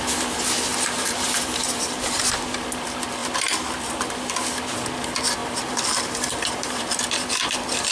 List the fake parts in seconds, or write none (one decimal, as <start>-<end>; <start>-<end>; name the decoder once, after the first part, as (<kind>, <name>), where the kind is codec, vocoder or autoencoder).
0.7-2.2 (vocoder, BigVGAN v2); 3.2-4.1; 5.4-7.0